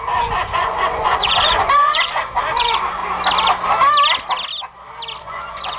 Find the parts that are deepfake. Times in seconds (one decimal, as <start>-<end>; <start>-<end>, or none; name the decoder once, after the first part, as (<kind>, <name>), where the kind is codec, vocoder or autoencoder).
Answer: 0.0-3.0 (vocoder, Vocos); 5.2-5.8